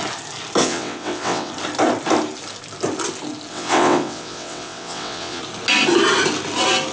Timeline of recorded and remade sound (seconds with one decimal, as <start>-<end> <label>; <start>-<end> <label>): 0.0-0.6 recorded; 0.6-1.5 remade; 1.5-3.5 recorded; 3.5-5.4 remade; 5.4-6.9 recorded